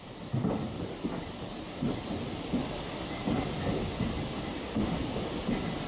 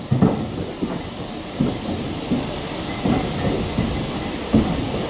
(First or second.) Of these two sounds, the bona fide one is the second